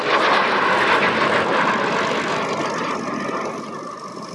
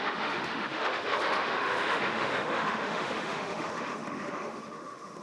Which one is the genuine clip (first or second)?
first